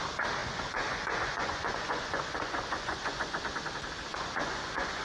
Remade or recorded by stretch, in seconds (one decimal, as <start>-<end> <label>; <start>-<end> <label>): 0.0-0.4 recorded; 0.4-3.4 remade; 3.4-4.1 recorded; 4.1-5.0 remade